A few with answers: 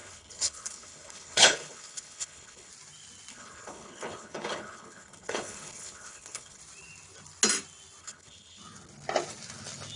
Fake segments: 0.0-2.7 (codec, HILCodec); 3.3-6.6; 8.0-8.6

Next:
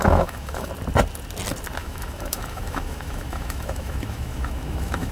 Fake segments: 0.0-0.7 (autoencoder, DAC-VAE); 1.8-5.1